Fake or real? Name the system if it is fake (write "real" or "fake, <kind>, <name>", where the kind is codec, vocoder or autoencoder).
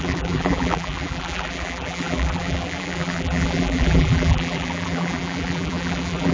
fake, vocoder, BigVGAN v2